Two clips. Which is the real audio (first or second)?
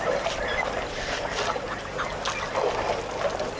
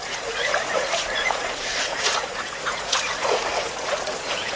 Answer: first